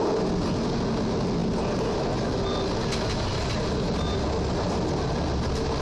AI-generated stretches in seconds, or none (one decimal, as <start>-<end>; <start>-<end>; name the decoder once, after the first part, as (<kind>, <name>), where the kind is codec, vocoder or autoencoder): none